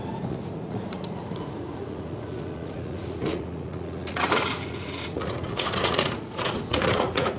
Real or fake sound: fake